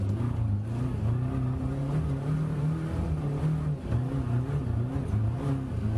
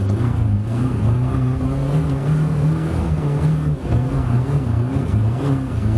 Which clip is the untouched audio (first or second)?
first